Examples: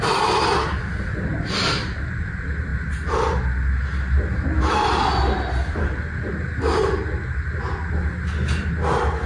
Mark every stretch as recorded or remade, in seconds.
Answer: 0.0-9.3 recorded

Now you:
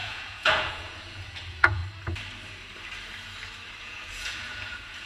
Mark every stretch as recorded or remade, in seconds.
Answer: 0.0-1.8 remade; 1.8-3.8 recorded; 3.8-5.1 remade